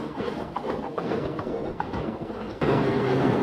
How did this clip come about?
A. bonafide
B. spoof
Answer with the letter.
B